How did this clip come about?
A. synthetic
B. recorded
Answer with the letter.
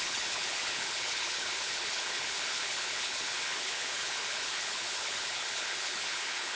A